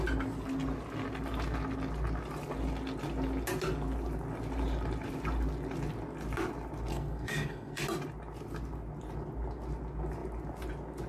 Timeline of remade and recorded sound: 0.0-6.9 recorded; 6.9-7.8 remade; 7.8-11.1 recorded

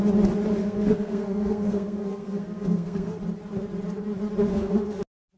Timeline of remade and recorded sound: 0.0-0.6 recorded; 0.6-3.2 remade; 3.2-4.5 recorded; 4.5-5.0 remade; 5.0-5.4 recorded

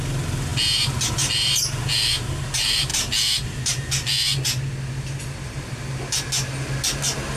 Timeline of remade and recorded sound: 0.0-7.4 recorded

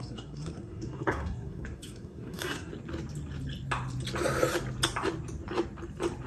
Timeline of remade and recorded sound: 0.0-2.7 remade; 2.7-6.3 recorded

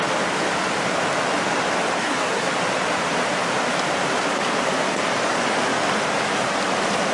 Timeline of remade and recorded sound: 0.0-2.0 recorded; 2.0-2.5 remade; 2.5-7.1 recorded

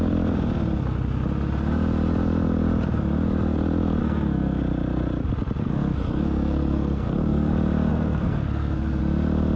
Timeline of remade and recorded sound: 0.0-4.0 recorded; 4.0-4.6 remade; 4.6-5.6 recorded; 5.6-7.5 remade; 7.5-7.9 recorded; 7.9-9.0 remade; 9.0-9.6 recorded